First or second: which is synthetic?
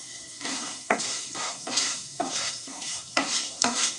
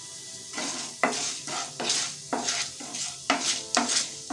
first